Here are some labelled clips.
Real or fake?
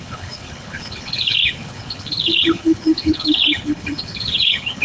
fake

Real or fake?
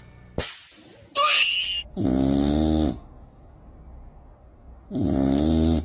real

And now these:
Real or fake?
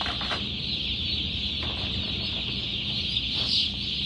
real